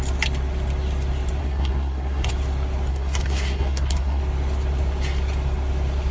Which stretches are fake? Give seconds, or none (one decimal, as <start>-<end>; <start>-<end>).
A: 1.4-2.3; 2.9-4.2